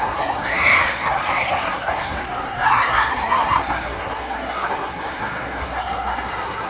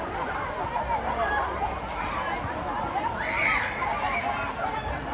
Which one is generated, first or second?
first